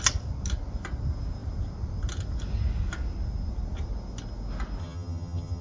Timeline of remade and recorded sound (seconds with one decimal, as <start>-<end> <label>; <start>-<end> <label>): 0.0-4.8 recorded; 4.8-5.6 remade